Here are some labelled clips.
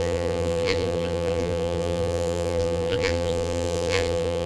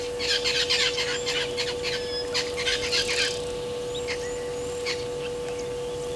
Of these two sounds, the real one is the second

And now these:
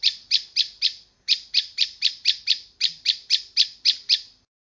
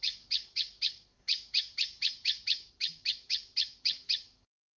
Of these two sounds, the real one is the first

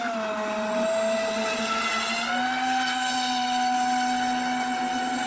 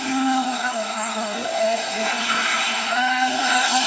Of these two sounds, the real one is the first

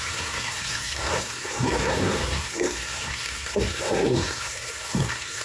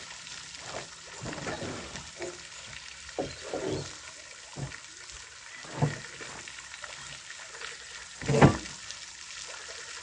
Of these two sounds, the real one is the second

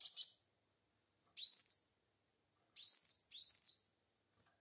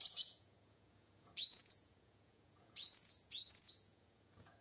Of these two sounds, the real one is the first